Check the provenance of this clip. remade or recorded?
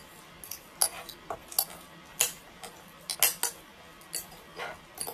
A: recorded